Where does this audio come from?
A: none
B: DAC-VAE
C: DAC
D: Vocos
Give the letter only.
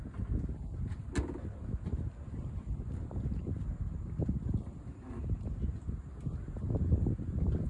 A